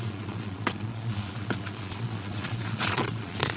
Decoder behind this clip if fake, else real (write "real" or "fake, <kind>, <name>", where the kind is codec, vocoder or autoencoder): fake, vocoder, Vocos